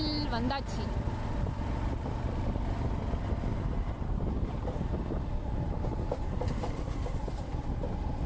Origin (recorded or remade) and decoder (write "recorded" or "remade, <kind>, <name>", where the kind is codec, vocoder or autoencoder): recorded